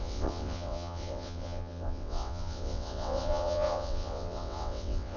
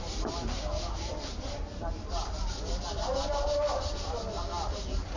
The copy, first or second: first